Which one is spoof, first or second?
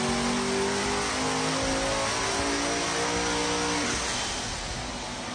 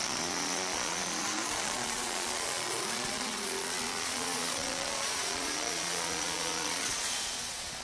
second